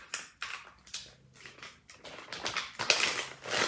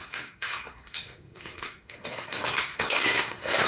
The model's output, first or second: second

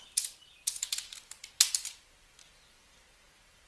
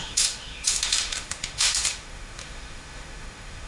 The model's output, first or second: second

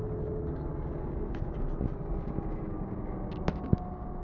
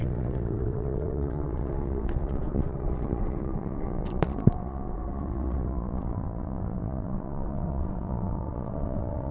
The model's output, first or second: second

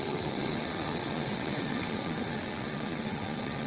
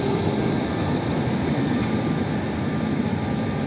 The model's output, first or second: first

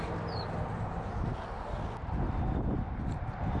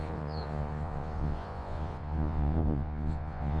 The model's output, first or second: second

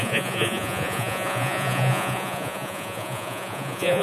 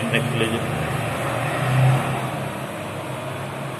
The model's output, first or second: first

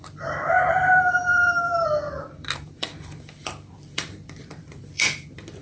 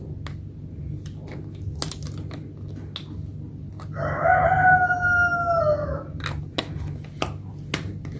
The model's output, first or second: first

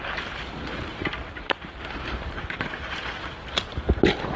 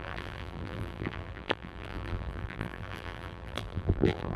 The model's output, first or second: second